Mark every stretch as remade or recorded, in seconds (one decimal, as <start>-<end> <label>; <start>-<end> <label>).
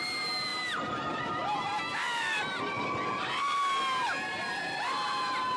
0.0-0.5 recorded; 0.5-2.6 remade; 2.6-5.6 recorded